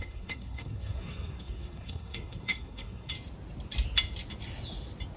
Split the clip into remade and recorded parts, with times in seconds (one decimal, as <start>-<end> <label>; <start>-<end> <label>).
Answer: 0.0-3.1 remade; 3.1-5.2 recorded